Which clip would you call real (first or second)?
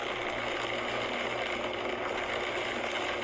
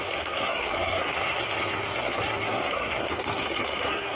first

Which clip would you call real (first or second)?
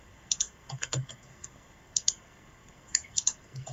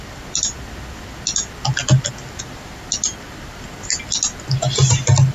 second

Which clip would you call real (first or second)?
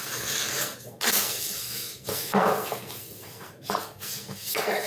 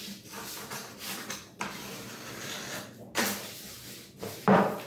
second